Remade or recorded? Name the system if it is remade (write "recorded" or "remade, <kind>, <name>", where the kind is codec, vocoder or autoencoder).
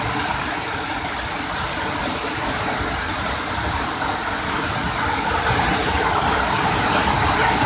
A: recorded